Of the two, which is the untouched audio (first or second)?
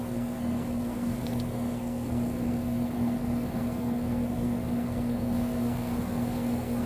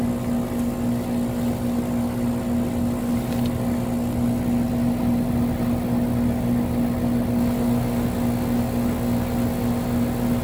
second